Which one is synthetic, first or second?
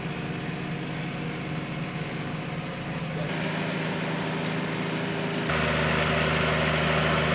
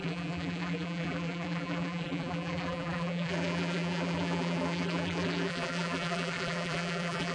second